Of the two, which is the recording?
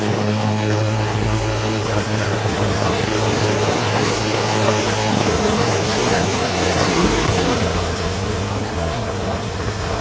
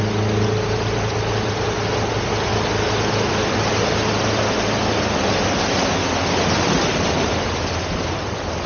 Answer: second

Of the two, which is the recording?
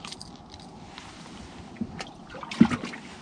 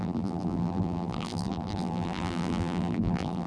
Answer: first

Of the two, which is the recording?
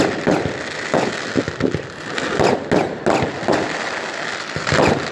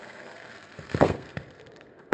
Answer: first